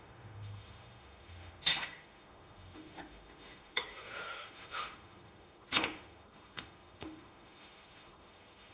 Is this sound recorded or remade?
remade